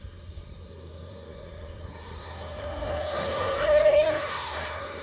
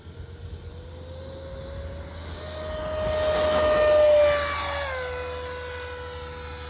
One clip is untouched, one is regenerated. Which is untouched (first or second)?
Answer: second